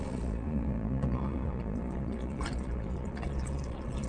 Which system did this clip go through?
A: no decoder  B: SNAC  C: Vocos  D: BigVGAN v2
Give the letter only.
C